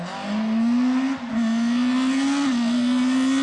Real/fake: real